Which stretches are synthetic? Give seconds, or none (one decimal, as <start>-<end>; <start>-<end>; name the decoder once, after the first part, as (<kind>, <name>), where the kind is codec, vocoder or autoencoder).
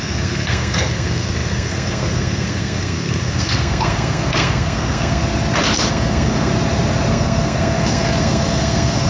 0.0-5.2 (codec, SNAC); 5.9-6.5; 7.1-9.1